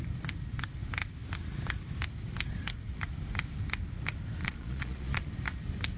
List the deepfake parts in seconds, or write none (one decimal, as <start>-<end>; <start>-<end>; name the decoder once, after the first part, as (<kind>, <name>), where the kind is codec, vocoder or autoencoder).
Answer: 4.4-5.3 (vocoder, Vocos)